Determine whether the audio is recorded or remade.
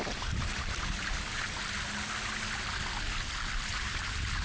recorded